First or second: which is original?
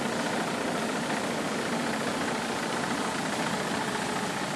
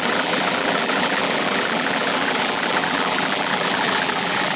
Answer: first